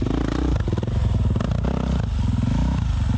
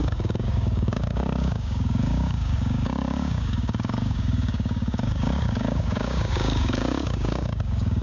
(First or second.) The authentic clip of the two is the first